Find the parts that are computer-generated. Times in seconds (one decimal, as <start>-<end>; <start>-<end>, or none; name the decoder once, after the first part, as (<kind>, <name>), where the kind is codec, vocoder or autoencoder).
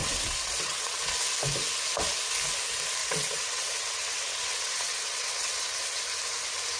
0.0-1.1 (vocoder, WaveNeXt); 3.0-6.0